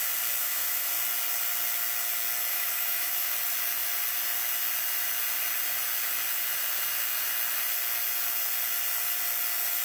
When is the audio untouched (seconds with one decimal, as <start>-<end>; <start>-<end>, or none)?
0.0-0.4; 0.9-2.5; 3.3-9.8